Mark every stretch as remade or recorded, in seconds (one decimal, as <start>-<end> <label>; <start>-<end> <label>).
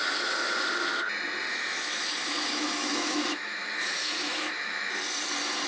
0.0-1.5 recorded; 1.5-4.9 remade; 4.9-5.7 recorded